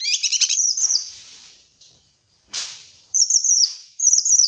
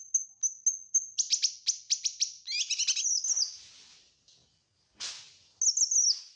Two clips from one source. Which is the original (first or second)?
second